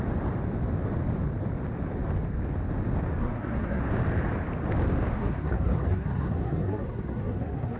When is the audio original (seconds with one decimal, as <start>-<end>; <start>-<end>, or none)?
0.0-3.2; 3.8-5.1